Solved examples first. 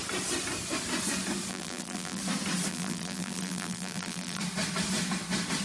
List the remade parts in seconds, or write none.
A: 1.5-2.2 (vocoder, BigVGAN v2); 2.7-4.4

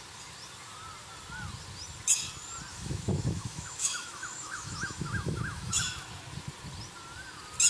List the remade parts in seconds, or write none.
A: 2.7-5.8 (autoencoder, DAC-VAE)

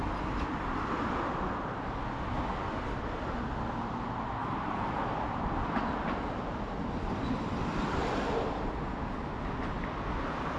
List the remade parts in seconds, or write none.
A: 4.4-5.0 (vocoder, BigVGAN v2)

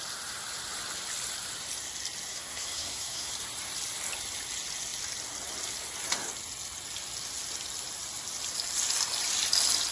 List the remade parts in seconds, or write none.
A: 2.3-3.3 (codec, SNAC)

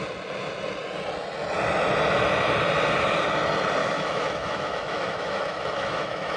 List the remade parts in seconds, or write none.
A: 3.8-6.4 (autoencoder, DAC-VAE)